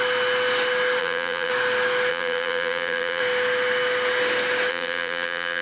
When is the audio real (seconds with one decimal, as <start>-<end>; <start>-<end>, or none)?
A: 0.0-1.0; 1.5-2.1; 3.2-4.7